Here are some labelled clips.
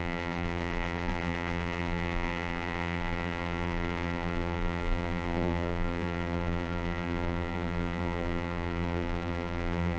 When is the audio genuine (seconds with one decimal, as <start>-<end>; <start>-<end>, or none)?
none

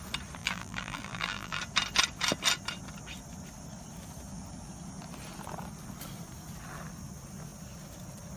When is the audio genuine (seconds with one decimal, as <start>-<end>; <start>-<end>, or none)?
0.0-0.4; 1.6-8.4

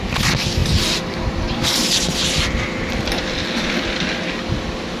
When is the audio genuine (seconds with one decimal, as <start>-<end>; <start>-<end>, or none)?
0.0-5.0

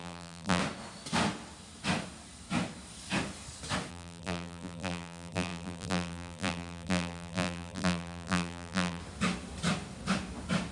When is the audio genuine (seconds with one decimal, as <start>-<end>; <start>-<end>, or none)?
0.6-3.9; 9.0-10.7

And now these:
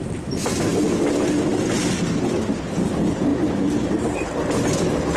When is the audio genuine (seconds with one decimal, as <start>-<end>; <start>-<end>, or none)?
0.0-3.3; 4.4-5.2